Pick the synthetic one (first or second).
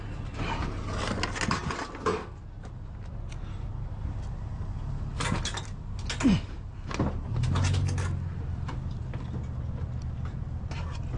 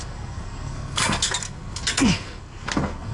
second